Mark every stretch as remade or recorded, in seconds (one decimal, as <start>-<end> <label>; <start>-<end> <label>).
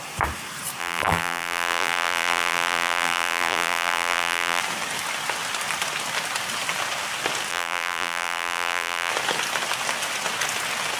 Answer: 0.0-0.8 recorded; 0.8-4.6 remade; 4.6-7.5 recorded; 7.5-9.1 remade; 9.1-11.0 recorded